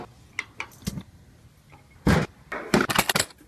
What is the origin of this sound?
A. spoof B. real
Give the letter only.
B